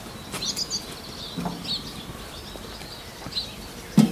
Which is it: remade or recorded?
recorded